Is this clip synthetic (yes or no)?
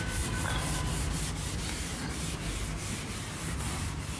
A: no